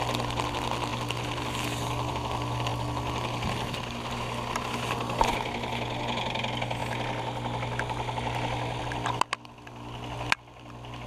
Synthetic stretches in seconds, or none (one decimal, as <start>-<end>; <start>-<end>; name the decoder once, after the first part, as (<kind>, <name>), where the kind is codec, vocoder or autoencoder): none